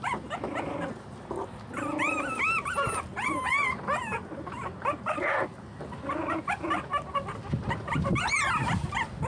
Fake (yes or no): no